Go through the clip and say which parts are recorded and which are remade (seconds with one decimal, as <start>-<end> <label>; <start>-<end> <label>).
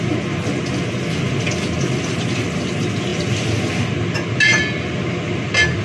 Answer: 0.0-5.8 recorded